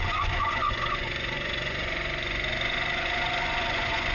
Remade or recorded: remade